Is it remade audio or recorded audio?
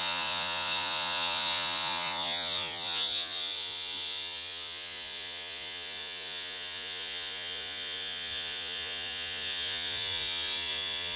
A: remade